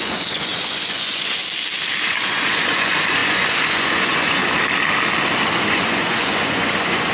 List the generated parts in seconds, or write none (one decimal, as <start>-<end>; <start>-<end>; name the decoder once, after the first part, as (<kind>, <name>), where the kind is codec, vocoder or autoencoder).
0.0-1.4 (vocoder, Vocos); 2.1-4.4; 5.7-7.1